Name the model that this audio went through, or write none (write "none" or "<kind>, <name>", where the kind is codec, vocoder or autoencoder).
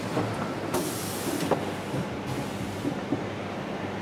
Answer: none